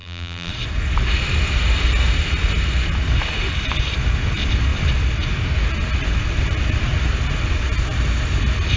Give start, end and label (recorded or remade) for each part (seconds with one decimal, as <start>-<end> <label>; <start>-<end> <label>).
0.0-0.5 remade; 0.5-8.8 recorded

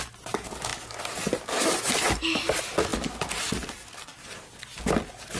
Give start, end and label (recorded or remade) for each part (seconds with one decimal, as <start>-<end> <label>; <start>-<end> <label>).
0.0-5.4 recorded

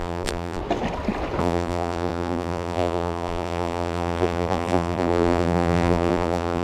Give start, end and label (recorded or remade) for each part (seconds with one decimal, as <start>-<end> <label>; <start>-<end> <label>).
0.0-0.6 remade; 0.6-1.4 recorded; 1.4-6.6 remade

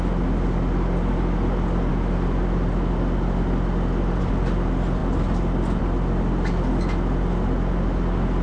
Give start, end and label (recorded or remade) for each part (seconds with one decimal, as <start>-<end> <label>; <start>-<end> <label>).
0.0-8.4 recorded

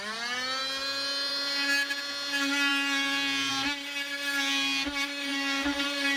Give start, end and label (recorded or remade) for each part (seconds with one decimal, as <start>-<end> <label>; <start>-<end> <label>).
0.0-5.3 recorded; 5.3-6.2 remade

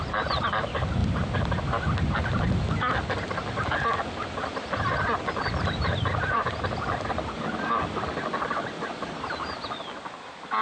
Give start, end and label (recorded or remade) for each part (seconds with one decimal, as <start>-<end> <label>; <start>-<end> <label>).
0.0-10.6 recorded

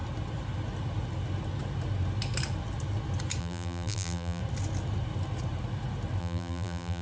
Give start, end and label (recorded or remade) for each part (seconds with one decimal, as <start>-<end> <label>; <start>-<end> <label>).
0.0-3.4 recorded; 3.4-4.4 remade; 4.4-6.2 recorded; 6.2-7.0 remade